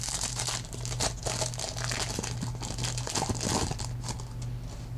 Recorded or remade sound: recorded